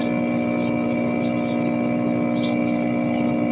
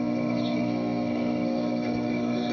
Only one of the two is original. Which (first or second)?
first